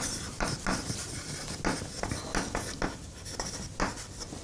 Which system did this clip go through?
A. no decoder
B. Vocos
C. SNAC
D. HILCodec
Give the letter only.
A